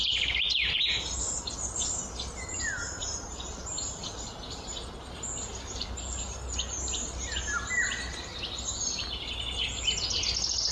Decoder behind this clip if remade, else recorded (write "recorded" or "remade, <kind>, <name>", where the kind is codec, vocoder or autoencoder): recorded